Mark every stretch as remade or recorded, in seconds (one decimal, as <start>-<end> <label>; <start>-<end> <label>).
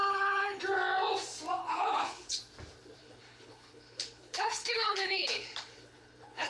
0.0-0.6 remade; 0.6-1.6 recorded; 1.6-2.4 remade; 2.4-3.0 recorded; 3.0-6.5 remade